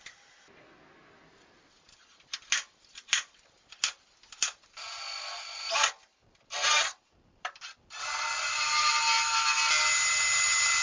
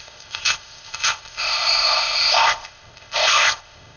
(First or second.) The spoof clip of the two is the second